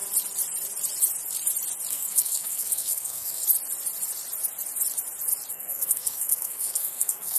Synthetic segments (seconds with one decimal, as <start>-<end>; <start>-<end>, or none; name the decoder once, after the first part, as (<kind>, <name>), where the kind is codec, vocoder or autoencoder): 1.9-3.4 (codec, SNAC); 5.5-7.4